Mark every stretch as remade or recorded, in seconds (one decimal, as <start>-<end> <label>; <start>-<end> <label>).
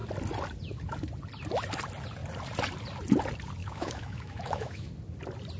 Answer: 0.0-3.6 recorded; 3.6-4.9 remade; 4.9-5.6 recorded